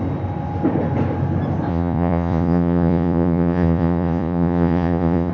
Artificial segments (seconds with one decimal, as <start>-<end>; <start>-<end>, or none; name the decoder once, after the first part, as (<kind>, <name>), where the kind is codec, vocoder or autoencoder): 1.7-5.3 (vocoder, Vocos)